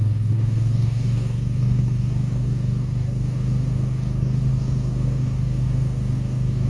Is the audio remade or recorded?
remade